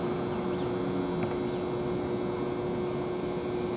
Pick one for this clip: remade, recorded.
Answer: recorded